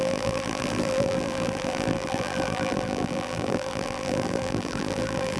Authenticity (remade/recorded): remade